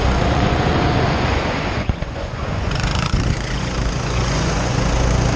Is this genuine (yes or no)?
no